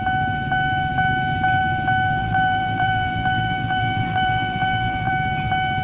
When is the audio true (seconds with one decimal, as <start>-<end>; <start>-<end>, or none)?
0.0-2.2; 5.1-5.8